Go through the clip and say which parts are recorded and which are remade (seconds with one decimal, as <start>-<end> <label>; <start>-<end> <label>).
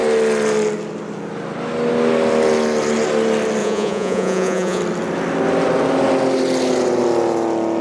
0.0-3.6 recorded; 3.6-4.8 remade; 4.8-7.8 recorded